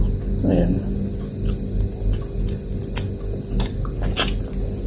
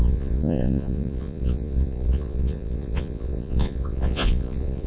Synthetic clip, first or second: second